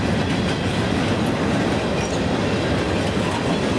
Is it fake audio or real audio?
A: real